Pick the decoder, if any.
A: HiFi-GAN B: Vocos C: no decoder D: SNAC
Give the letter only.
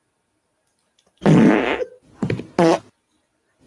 C